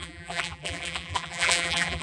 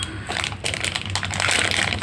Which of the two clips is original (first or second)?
second